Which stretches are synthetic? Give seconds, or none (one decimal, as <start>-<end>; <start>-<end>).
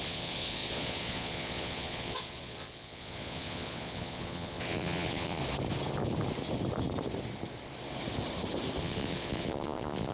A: 0.0-5.4; 8.8-10.1